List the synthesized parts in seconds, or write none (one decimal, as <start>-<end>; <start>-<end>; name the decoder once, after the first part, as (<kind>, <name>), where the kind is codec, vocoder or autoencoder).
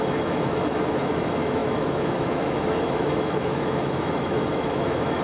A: 0.0-5.2 (autoencoder, DAC-VAE)